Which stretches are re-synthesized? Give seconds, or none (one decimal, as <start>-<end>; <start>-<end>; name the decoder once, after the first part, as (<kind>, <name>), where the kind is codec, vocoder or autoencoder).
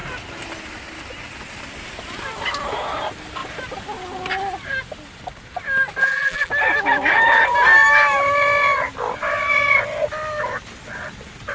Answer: 6.0-6.5 (vocoder, BigVGAN v2)